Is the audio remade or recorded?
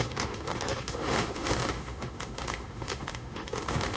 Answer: remade